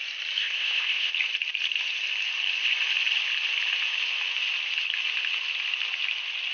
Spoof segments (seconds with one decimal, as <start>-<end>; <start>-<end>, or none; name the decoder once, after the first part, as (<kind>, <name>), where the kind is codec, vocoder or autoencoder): 0.4-1.1 (codec, ZipCodec)